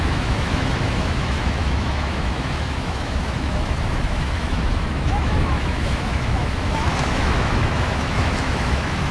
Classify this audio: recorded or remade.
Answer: remade